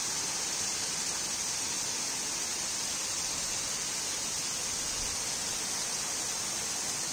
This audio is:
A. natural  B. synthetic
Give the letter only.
A